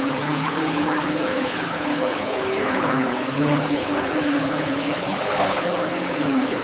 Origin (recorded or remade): remade